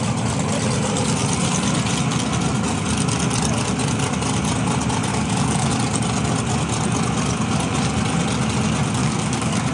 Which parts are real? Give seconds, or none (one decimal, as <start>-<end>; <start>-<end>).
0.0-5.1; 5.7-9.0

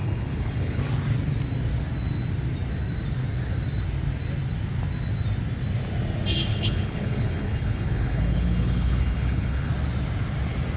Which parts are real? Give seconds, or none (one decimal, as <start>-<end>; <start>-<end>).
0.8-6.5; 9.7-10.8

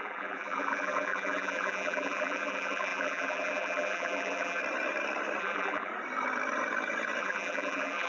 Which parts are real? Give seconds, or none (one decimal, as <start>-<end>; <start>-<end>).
4.6-5.4; 5.9-7.2